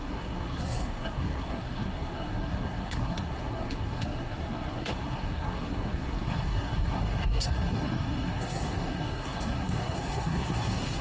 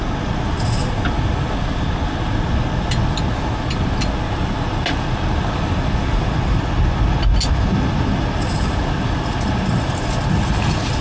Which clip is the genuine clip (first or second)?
second